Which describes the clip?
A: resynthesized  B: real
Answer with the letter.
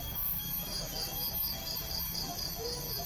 A